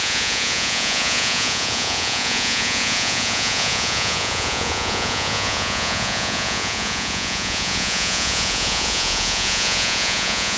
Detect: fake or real fake